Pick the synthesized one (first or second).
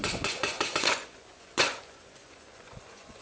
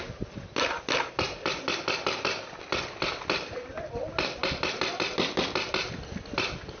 first